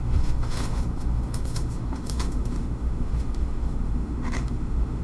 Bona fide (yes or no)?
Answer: no